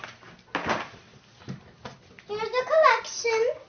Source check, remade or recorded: recorded